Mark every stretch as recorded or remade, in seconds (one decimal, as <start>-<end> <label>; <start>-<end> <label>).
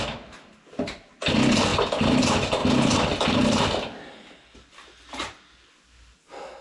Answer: 0.0-6.6 recorded